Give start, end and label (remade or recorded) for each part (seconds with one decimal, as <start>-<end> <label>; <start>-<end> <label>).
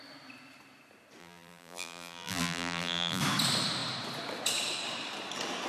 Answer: 0.0-1.2 recorded; 1.2-3.2 remade; 3.2-5.7 recorded